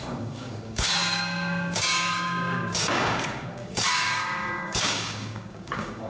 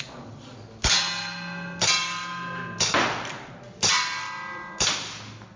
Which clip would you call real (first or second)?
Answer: second